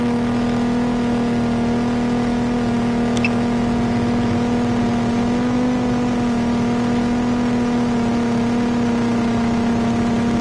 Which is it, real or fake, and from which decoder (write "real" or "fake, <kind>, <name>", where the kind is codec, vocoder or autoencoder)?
real